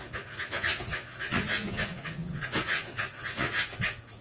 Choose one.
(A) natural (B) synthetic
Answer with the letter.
B